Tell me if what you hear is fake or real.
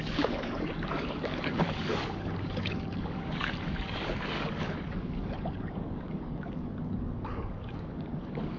fake